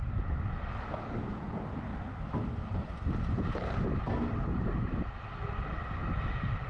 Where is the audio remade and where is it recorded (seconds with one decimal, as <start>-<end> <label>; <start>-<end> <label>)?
0.0-6.7 recorded